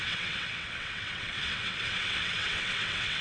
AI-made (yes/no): yes